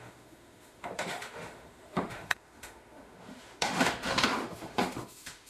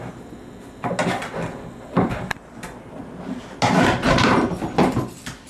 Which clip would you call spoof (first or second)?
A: first